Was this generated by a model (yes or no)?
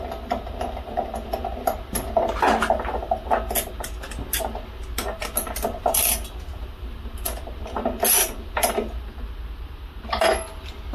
no